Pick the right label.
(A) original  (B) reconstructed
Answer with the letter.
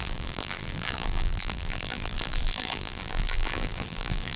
B